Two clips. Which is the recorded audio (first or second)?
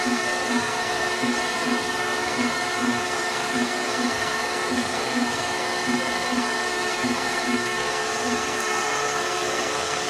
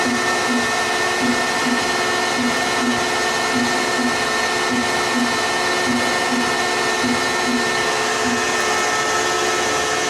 second